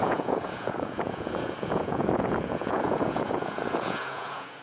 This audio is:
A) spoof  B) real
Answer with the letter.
A